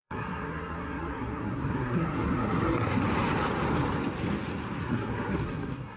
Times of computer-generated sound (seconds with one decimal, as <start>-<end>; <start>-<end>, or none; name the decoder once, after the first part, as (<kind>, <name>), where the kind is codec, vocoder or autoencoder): 0.0-3.0 (codec, SNAC); 4.8-6.0